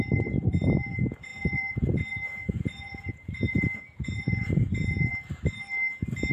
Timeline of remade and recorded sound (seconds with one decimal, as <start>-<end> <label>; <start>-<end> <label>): 0.0-5.1 remade; 5.1-6.3 recorded